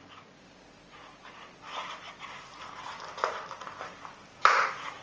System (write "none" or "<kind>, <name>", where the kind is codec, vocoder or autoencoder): none